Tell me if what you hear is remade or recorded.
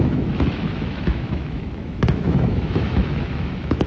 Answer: remade